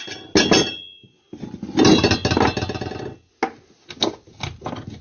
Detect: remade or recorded recorded